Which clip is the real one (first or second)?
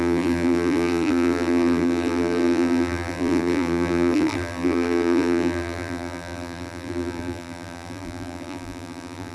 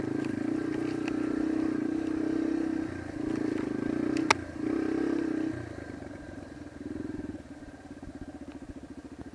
second